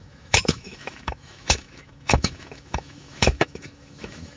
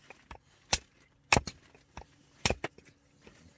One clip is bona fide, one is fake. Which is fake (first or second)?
first